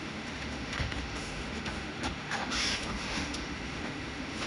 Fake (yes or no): yes